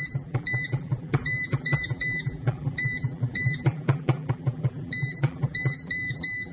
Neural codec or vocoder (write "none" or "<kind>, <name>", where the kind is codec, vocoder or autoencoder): vocoder, BigVGAN v2